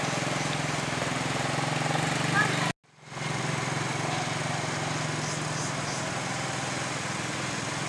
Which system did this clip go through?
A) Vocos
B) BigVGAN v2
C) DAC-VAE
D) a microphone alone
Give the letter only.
D